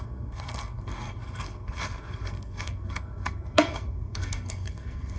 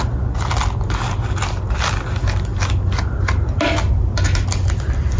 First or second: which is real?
second